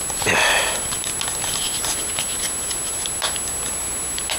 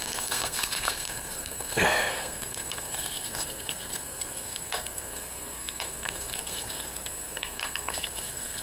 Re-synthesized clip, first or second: second